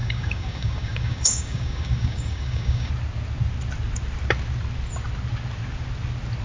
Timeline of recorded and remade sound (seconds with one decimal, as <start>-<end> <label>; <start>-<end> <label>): 0.0-2.9 remade; 2.9-6.4 recorded